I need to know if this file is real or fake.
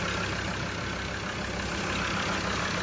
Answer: real